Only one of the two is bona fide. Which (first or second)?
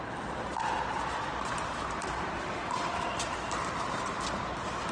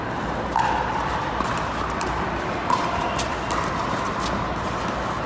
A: second